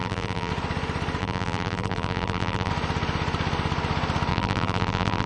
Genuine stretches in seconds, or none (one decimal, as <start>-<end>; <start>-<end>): 0.5-1.2; 2.7-4.3